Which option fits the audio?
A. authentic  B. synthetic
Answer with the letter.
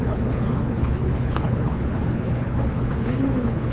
B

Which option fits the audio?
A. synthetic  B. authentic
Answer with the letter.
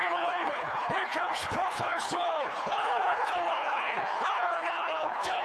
A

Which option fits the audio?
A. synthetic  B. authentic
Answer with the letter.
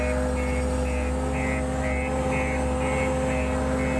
B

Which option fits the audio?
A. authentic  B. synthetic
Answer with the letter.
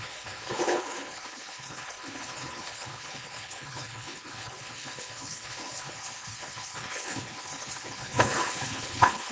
B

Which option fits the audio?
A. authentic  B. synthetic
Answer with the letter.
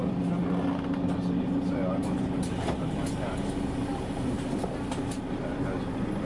A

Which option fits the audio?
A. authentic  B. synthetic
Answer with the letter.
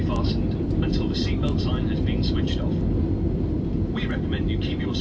A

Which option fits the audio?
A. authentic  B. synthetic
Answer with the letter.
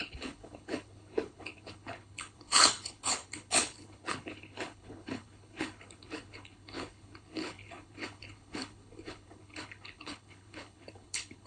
B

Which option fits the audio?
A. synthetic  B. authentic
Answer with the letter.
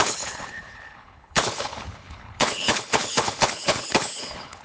A